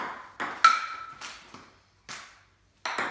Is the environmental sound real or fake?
real